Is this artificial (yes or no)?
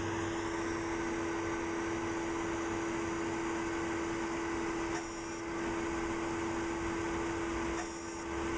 no